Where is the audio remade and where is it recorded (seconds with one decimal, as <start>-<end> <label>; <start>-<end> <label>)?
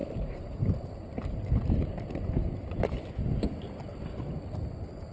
0.0-3.1 remade; 3.1-5.1 recorded